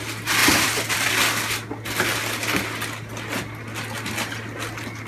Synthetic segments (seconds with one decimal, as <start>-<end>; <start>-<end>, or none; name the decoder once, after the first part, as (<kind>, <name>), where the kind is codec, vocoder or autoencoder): 0.4-1.1 (vocoder, BigVGAN v2)